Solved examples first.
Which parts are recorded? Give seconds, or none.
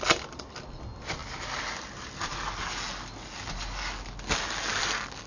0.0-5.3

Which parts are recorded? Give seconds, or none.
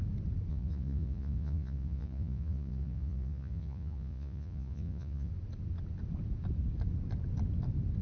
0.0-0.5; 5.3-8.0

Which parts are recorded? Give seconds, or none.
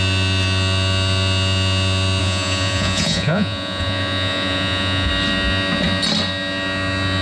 0.0-2.2; 5.1-7.2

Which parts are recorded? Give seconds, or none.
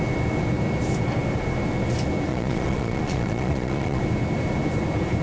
0.0-2.3; 4.0-5.2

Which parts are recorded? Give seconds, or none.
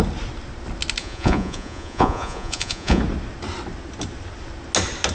0.0-1.0; 3.0-5.1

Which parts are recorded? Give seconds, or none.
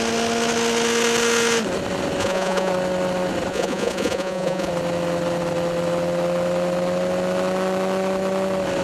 0.0-2.2; 2.7-3.5; 4.7-8.8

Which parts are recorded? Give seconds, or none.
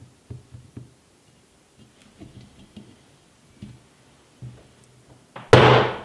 0.0-6.0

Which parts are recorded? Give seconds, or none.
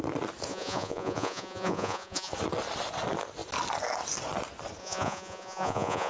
0.0-0.5; 2.3-4.8